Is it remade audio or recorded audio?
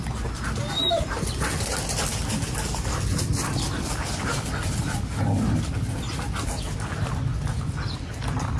recorded